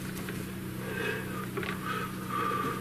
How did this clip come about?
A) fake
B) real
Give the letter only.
B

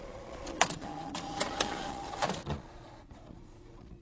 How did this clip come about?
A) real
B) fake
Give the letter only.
B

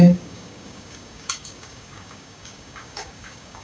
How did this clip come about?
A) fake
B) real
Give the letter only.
A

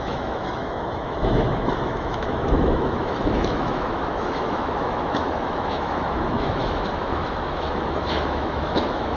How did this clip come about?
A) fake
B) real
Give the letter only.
A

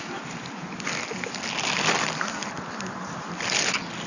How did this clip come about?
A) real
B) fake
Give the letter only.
A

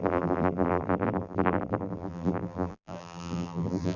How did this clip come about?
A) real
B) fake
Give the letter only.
B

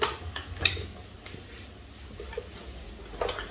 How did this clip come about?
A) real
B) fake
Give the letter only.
B